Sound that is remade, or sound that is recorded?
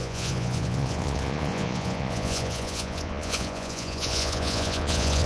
remade